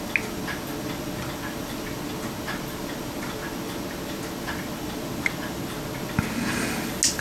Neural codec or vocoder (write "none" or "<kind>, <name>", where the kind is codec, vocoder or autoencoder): none